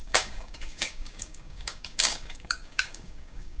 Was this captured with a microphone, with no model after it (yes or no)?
no